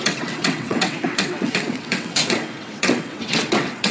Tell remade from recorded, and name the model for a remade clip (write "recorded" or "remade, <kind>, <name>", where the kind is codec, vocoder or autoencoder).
remade, vocoder, WaveNeXt